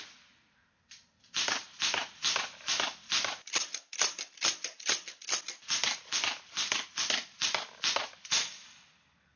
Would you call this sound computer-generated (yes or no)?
no